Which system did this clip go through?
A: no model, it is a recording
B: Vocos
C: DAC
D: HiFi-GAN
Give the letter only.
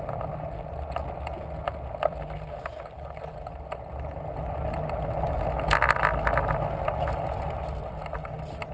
A